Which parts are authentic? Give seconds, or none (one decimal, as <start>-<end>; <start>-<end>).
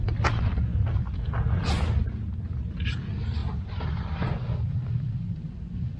0.0-6.0